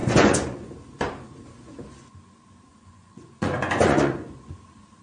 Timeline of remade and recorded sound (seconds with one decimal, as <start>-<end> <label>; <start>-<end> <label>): 0.0-0.7 remade; 0.7-2.7 recorded; 2.7-4.5 remade; 4.5-5.0 recorded